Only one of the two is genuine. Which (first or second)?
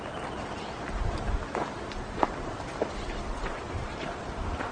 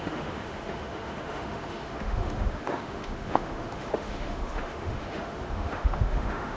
first